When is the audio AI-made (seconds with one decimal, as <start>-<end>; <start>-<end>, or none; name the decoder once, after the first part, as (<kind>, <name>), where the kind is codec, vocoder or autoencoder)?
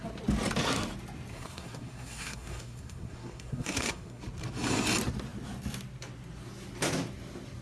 1.3-4.2 (codec, SNAC)